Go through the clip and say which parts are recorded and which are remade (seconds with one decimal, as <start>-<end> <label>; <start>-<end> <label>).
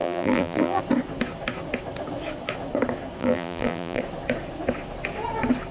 0.0-0.8 remade; 0.8-3.2 recorded; 3.2-4.0 remade; 4.0-5.7 recorded